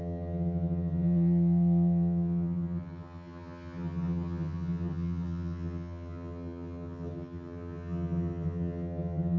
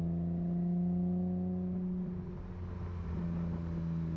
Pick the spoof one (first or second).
first